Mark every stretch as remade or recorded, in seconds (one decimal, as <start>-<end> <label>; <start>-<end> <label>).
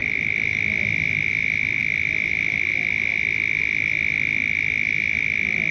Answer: 0.0-1.8 recorded; 1.8-2.7 remade; 2.7-5.7 recorded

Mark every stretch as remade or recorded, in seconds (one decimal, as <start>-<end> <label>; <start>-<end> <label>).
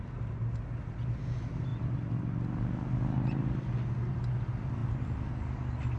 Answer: 0.0-6.0 recorded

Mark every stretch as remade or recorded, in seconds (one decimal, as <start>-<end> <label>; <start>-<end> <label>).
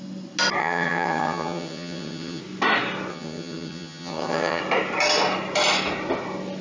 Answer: 0.0-0.6 recorded; 0.6-2.4 remade; 2.4-3.1 recorded; 3.1-4.6 remade; 4.6-6.6 recorded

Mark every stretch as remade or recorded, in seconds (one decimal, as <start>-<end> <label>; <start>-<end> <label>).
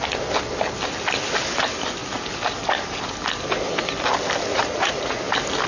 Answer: 0.0-4.5 recorded; 4.5-5.2 remade; 5.2-5.7 recorded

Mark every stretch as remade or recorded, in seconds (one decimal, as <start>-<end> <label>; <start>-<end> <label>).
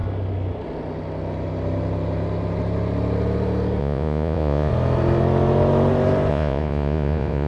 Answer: 0.0-3.8 recorded; 3.8-4.7 remade; 4.7-6.3 recorded; 6.3-7.5 remade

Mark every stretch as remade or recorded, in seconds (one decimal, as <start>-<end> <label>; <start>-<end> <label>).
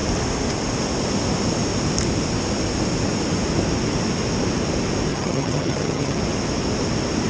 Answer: 0.0-5.1 recorded; 5.1-6.2 remade; 6.2-7.3 recorded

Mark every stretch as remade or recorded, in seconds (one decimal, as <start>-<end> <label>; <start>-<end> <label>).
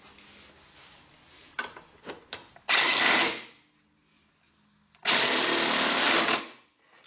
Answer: 0.0-7.1 recorded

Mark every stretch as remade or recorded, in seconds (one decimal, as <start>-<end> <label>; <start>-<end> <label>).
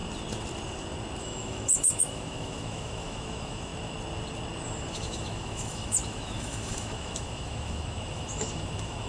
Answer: 0.0-1.2 recorded; 1.2-3.7 remade; 3.7-4.9 recorded; 4.9-9.1 remade